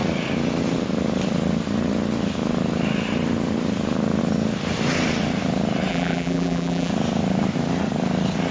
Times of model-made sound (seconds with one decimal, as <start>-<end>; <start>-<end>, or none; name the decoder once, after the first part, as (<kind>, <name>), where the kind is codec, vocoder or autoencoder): 5.9-6.9 (vocoder, BigVGAN v2)